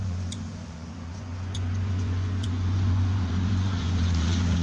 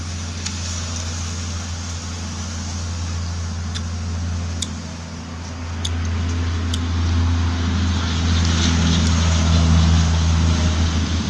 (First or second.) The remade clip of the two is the first